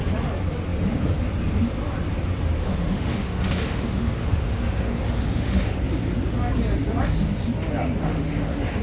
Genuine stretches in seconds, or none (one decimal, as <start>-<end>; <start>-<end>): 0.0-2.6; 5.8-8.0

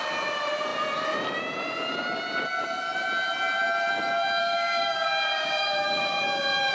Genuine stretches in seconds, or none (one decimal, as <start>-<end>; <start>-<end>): 0.0-4.4

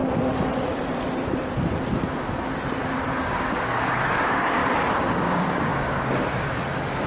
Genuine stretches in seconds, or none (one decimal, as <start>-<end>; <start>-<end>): 0.0-2.8; 4.6-5.1

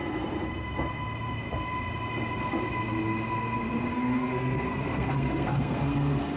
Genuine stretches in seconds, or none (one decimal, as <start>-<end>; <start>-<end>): 0.0-3.9